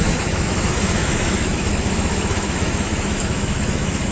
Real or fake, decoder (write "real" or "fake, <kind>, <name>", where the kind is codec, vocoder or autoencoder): fake, autoencoder, DAC-VAE